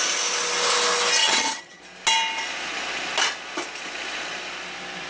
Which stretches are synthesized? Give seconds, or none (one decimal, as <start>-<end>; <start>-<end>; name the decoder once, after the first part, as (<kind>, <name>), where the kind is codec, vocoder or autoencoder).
1.2-1.8 (vocoder, HiFi-GAN)